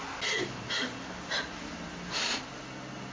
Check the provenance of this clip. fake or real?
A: real